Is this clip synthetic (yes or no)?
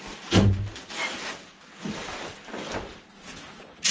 no